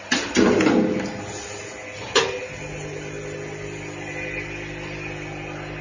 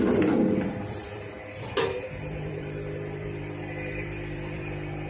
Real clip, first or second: first